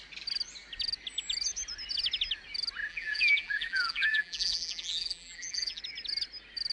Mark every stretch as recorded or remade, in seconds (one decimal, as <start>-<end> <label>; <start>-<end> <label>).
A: 0.0-2.9 recorded; 2.9-5.8 remade; 5.8-6.7 recorded